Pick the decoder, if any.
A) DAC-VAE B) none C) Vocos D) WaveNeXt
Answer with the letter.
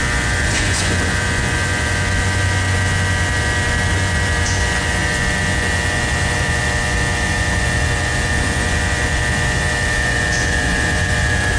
C